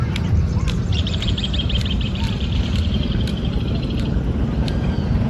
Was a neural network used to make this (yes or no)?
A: yes